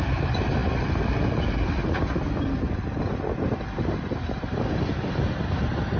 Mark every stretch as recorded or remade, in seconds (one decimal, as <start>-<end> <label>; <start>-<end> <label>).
0.0-6.0 recorded